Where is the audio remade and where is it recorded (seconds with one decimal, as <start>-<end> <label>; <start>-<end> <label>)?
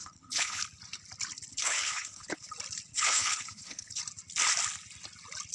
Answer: 0.0-0.6 remade; 0.6-1.5 recorded; 1.5-2.5 remade; 2.5-2.9 recorded; 2.9-4.0 remade; 4.0-5.5 recorded